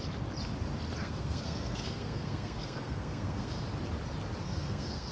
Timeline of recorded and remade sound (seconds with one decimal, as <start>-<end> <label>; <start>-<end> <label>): 0.0-1.0 recorded; 1.0-3.6 remade; 3.6-4.4 recorded; 4.4-5.1 remade